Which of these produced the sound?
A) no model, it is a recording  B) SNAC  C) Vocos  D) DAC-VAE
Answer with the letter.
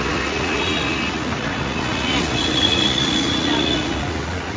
C